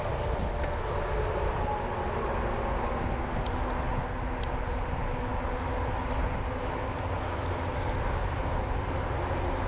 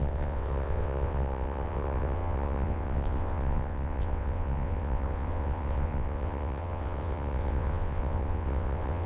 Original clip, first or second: first